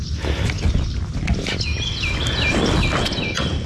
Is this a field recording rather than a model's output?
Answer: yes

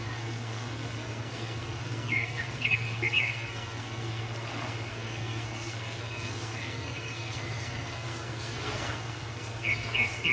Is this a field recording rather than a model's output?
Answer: no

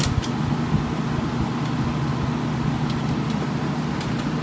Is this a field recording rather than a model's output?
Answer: yes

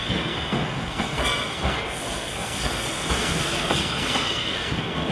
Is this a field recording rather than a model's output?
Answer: no